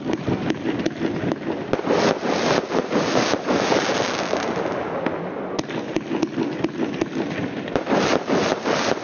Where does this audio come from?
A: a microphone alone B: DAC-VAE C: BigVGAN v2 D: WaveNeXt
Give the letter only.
A